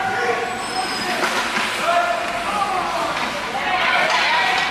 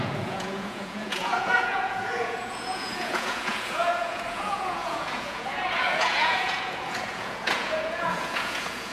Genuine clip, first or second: first